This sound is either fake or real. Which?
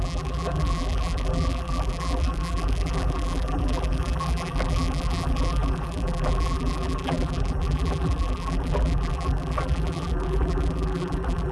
fake